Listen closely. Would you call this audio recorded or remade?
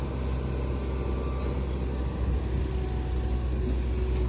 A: recorded